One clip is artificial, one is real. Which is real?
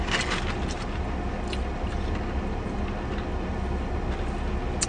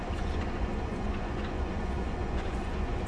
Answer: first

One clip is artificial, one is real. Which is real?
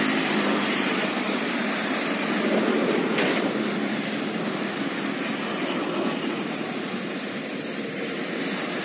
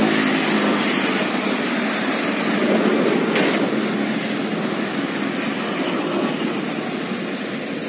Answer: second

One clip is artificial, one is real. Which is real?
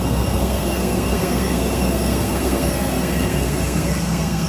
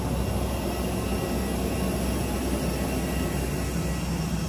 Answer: second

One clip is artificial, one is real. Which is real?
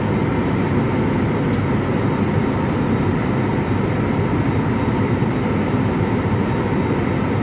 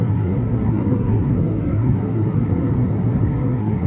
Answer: first